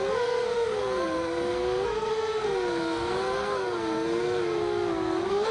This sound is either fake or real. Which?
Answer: fake